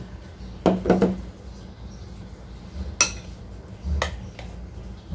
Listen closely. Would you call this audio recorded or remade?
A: recorded